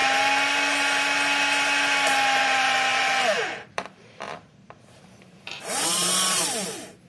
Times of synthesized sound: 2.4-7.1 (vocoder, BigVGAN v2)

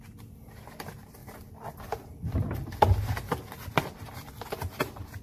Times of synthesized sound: 0.0-5.2 (vocoder, BigVGAN v2)